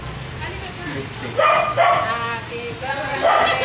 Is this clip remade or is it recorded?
recorded